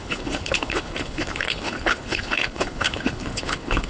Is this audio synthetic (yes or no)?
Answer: yes